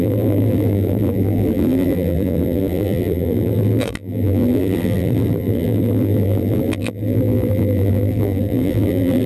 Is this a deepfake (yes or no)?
yes